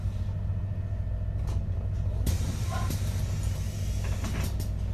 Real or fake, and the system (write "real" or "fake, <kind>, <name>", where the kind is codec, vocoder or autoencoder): real